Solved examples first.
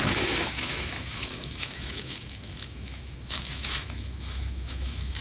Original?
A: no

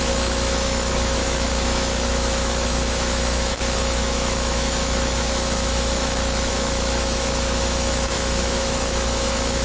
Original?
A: no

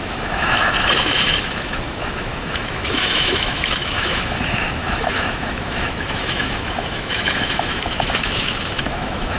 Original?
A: no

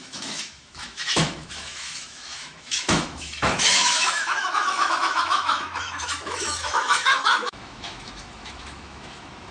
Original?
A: no